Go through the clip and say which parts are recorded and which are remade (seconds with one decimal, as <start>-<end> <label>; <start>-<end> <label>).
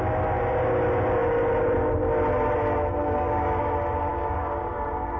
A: 0.0-3.0 recorded; 3.0-3.6 remade; 3.6-4.1 recorded; 4.1-4.7 remade; 4.7-5.2 recorded